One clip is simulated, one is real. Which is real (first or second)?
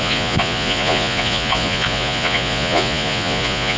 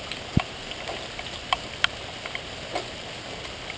second